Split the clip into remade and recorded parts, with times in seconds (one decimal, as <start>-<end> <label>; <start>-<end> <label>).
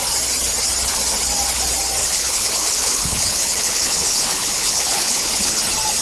0.0-2.0 recorded; 2.0-5.6 remade; 5.6-6.0 recorded